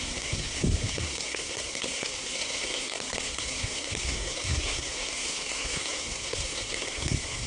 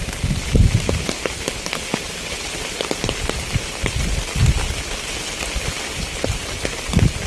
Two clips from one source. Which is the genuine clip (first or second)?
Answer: second